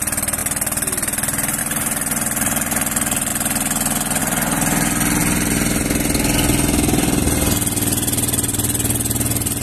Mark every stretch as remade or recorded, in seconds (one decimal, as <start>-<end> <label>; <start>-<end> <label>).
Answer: 0.0-9.6 recorded